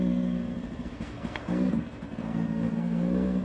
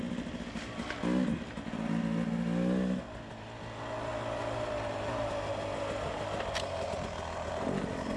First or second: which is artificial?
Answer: first